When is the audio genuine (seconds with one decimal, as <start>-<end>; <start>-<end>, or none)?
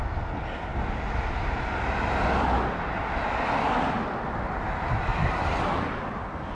0.0-5.1; 6.1-6.5